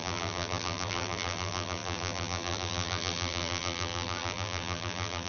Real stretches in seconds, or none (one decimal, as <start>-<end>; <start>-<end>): none